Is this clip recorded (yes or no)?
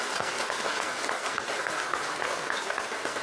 no